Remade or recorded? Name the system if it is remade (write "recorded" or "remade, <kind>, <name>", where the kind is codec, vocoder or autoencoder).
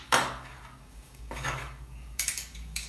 remade, codec, DAC